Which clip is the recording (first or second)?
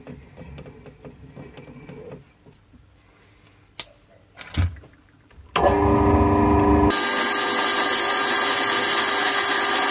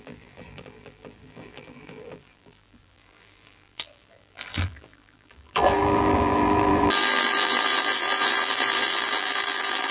first